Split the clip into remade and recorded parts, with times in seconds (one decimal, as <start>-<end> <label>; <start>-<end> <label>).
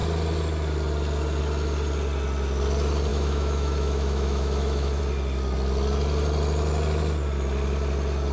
0.0-3.1 recorded; 3.1-5.0 remade; 5.0-8.3 recorded